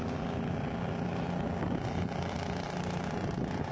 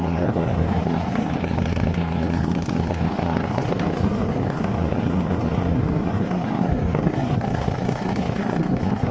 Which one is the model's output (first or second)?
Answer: second